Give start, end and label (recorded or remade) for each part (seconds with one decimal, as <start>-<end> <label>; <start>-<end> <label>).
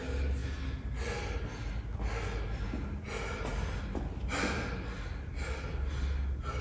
0.0-6.6 recorded